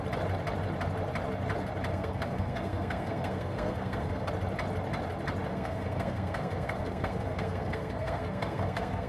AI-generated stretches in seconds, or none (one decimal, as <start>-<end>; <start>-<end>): 1.9-4.3; 5.5-9.1